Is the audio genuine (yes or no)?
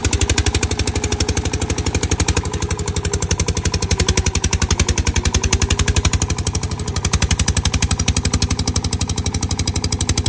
yes